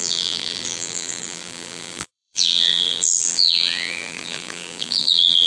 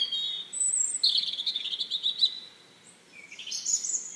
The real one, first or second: second